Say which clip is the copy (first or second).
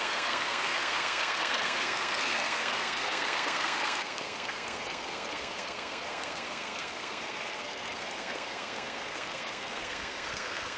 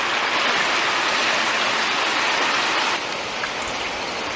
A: first